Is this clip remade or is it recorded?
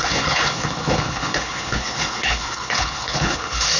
remade